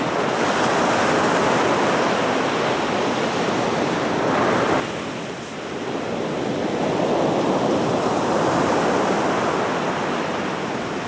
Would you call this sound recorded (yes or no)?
yes